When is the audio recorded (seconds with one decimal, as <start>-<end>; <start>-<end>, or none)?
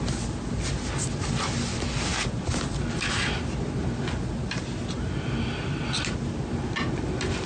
0.0-7.5